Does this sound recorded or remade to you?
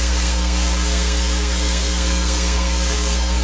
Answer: remade